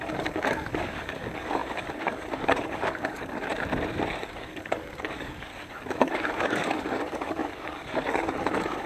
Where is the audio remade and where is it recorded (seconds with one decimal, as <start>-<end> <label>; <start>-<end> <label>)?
0.0-3.5 remade; 3.5-4.2 recorded; 4.2-8.9 remade